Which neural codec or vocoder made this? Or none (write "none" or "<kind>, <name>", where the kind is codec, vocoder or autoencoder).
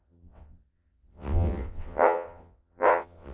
vocoder, WaveNeXt